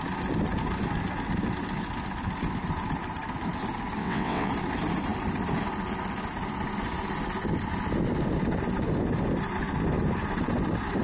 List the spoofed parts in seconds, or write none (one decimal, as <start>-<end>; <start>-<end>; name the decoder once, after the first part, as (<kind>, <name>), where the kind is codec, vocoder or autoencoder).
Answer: 4.0-4.5 (vocoder, WaveNeXt)